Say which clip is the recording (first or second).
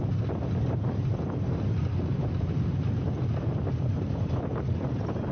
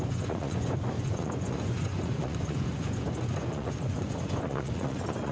first